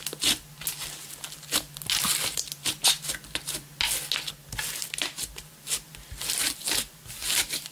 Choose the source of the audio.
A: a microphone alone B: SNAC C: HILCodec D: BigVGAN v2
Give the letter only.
A